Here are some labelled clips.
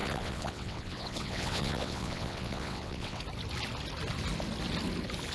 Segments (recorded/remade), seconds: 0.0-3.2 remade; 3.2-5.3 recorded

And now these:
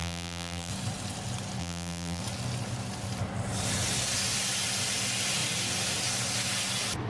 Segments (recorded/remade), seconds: 0.0-0.7 remade; 0.7-1.6 recorded; 1.6-2.2 remade; 2.2-7.1 recorded

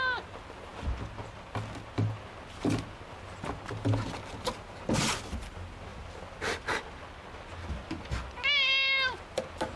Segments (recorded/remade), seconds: 0.0-9.8 recorded

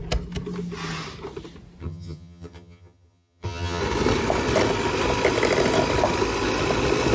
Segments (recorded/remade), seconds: 0.0-1.8 recorded; 1.8-3.8 remade; 3.8-7.1 recorded

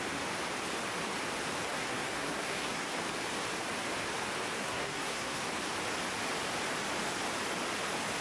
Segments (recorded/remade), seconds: 0.0-1.7 recorded; 1.7-3.0 remade; 3.0-4.6 recorded; 4.6-5.4 remade; 5.4-8.2 recorded